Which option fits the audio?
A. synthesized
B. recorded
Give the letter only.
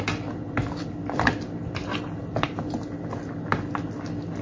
B